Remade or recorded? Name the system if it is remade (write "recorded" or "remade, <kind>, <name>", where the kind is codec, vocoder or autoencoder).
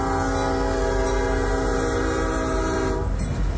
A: recorded